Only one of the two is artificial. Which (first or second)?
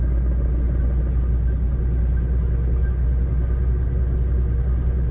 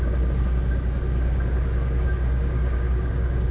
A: second